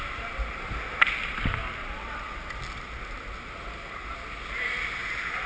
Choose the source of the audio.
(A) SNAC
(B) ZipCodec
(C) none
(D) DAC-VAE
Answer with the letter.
C